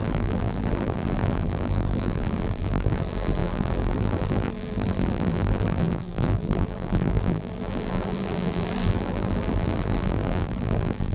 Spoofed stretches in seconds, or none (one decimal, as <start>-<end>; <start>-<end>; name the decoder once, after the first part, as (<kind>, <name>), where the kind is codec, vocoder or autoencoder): 0.0-11.1 (vocoder, BigVGAN v2)